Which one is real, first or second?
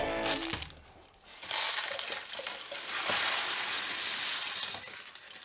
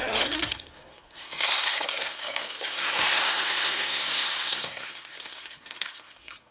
first